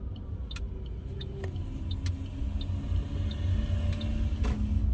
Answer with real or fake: real